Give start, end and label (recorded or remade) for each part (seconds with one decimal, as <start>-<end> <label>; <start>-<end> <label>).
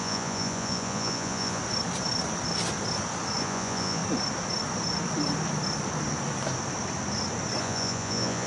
0.0-1.6 remade; 1.6-3.4 recorded; 3.4-4.0 remade; 4.0-7.6 recorded; 7.6-8.5 remade